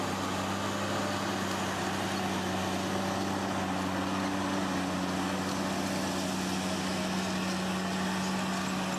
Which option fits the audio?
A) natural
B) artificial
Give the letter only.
A